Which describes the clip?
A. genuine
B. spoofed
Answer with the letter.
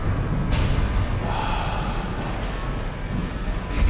A